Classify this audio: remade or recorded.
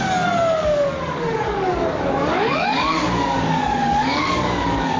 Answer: remade